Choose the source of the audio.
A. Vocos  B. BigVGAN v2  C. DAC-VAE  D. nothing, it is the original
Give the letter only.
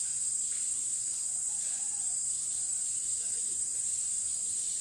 A